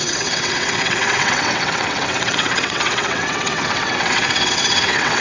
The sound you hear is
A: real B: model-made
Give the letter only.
B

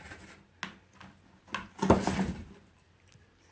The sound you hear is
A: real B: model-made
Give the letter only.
A